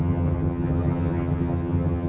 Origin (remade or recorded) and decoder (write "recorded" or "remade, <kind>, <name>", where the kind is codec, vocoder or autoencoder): remade, vocoder, HiFi-GAN